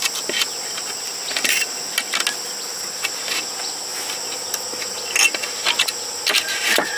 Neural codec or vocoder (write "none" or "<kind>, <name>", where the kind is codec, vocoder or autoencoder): none